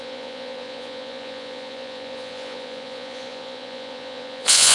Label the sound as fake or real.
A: fake